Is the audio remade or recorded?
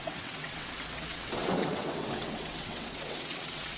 remade